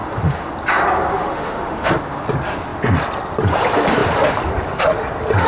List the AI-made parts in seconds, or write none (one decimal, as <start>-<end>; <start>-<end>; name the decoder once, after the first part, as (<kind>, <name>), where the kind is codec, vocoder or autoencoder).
0.0-0.5 (autoencoder, DAC-VAE); 1.1-1.9